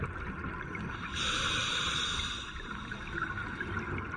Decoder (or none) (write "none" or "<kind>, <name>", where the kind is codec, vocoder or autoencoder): none